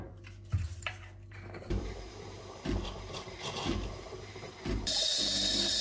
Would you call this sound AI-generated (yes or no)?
yes